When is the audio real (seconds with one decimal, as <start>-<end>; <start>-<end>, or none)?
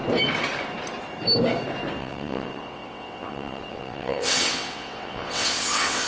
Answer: 0.0-2.0